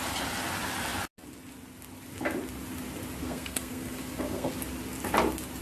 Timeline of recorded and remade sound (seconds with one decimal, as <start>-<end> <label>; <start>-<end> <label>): 0.0-3.2 recorded; 3.2-4.5 remade; 4.5-5.6 recorded